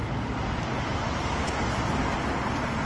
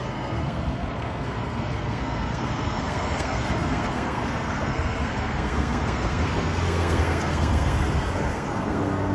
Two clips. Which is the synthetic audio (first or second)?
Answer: second